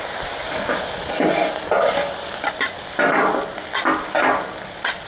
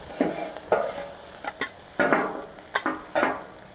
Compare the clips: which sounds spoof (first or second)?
first